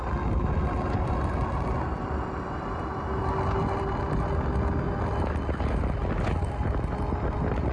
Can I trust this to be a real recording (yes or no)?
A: yes